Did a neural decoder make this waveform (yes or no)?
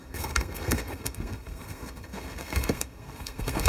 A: yes